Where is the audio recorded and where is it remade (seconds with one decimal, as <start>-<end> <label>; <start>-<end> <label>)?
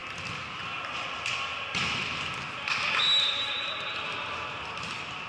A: 0.0-5.3 recorded